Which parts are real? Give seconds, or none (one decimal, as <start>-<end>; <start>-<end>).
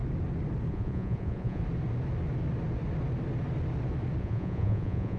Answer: 0.0-0.7; 1.6-4.2